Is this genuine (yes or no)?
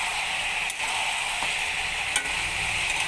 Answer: yes